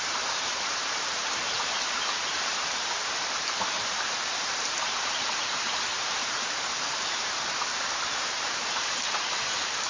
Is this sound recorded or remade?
remade